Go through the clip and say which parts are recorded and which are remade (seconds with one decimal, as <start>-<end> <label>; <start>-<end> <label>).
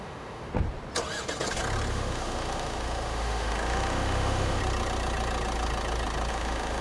0.0-0.5 remade; 0.5-1.9 recorded; 1.9-4.6 remade; 4.6-6.3 recorded; 6.3-6.8 remade